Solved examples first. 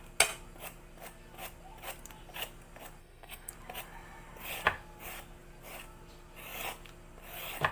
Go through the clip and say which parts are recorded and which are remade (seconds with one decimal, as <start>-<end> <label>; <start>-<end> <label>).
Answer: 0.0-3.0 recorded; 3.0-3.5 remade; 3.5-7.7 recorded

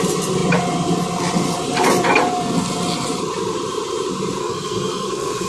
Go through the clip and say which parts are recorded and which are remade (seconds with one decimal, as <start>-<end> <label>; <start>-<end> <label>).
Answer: 0.0-4.4 recorded; 4.4-5.5 remade

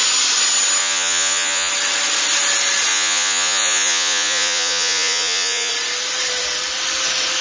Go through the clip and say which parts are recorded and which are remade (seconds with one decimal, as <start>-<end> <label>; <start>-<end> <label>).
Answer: 0.0-0.8 recorded; 0.8-1.7 remade; 1.7-2.9 recorded; 2.9-5.7 remade; 5.7-7.4 recorded

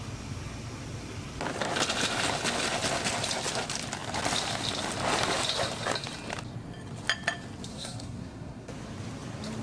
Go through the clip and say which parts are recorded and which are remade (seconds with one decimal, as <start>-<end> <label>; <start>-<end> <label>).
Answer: 0.0-7.7 recorded; 7.7-8.7 remade; 8.7-9.6 recorded